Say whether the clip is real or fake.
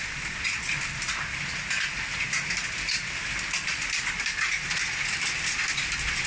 real